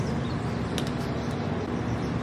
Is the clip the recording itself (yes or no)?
yes